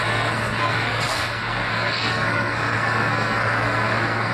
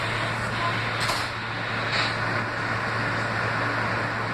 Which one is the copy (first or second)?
first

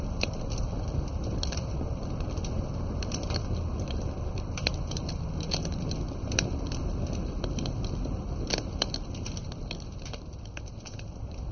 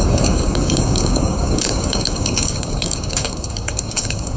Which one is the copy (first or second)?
second